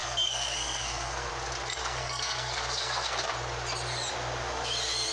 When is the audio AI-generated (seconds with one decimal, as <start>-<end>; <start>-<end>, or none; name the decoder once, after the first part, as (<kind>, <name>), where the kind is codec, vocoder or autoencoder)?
0.0-1.3 (codec, SNAC); 1.8-3.3

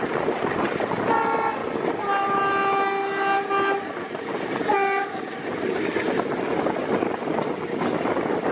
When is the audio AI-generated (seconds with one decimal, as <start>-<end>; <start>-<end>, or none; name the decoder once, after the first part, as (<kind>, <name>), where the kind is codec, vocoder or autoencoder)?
none

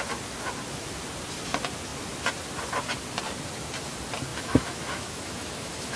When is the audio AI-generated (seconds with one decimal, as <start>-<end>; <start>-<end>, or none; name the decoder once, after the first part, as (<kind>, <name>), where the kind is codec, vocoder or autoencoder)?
4.3-6.0 (autoencoder, DAC-VAE)

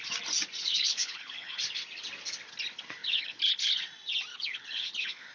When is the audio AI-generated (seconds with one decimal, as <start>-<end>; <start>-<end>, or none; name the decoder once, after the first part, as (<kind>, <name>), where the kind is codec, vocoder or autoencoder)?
0.6-1.6 (codec, HILCodec); 3.0-3.8; 4.3-5.3

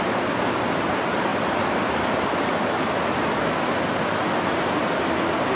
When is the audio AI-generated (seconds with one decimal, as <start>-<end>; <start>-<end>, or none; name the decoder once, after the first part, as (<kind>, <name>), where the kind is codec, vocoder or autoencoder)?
none

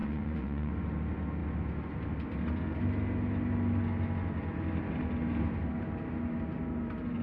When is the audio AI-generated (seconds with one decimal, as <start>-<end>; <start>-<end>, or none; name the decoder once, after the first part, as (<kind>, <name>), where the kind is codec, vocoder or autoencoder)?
0.0-0.7 (vocoder, Vocos)

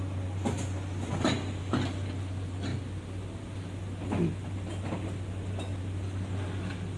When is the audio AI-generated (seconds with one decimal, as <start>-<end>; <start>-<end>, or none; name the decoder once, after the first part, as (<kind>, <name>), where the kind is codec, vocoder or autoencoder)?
none